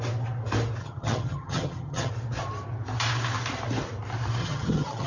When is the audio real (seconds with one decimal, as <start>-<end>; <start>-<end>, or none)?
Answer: 0.0-0.8; 2.1-4.4

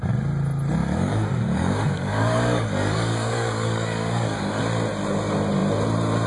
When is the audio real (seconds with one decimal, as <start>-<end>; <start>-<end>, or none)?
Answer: 0.0-0.8; 4.6-6.3

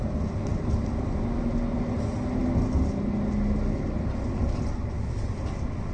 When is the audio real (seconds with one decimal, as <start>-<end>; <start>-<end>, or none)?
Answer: 0.0-5.9

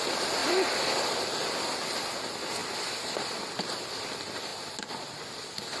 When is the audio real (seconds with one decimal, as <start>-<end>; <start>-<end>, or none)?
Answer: 0.0-0.4; 1.7-2.6; 4.1-4.5; 5.2-5.8